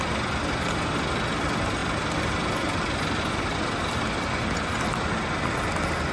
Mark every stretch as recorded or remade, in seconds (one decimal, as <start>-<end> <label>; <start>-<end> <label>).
0.0-1.8 recorded; 1.8-3.2 remade; 3.2-6.1 recorded